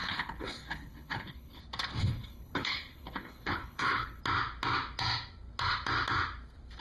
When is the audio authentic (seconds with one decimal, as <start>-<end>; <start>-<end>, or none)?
1.6-2.0; 4.2-6.8